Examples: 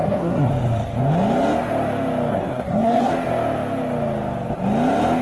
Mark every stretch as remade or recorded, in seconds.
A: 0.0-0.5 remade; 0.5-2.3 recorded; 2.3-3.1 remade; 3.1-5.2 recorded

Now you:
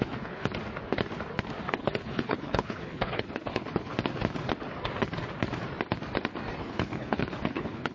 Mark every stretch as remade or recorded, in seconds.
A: 0.0-0.5 remade; 0.5-1.7 recorded; 1.7-3.9 remade; 3.9-6.6 recorded; 6.6-7.9 remade

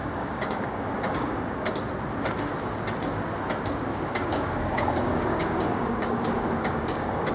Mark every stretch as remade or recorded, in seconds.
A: 0.0-1.7 remade; 1.7-3.9 recorded; 3.9-7.3 remade

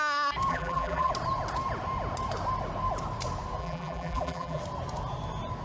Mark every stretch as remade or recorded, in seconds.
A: 0.0-0.5 recorded; 0.5-1.1 remade; 1.1-3.6 recorded; 3.6-4.6 remade; 4.6-5.6 recorded

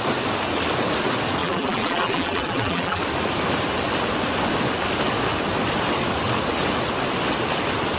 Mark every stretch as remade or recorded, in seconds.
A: 0.0-1.4 recorded; 1.4-3.0 remade; 3.0-8.0 recorded

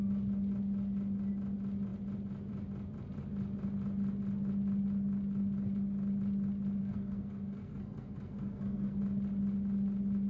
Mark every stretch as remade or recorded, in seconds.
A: 0.0-6.8 recorded; 6.8-9.0 remade; 9.0-10.3 recorded

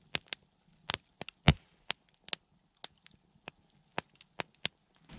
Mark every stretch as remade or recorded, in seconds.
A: 0.0-5.2 recorded

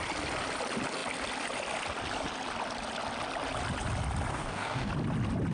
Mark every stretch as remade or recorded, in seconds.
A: 0.0-4.3 recorded; 4.3-4.9 remade; 4.9-5.5 recorded